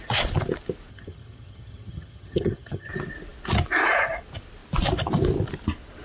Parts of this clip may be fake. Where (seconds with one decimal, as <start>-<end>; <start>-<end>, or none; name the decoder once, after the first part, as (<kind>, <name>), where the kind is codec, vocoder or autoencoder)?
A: 0.9-2.9 (vocoder, HiFi-GAN)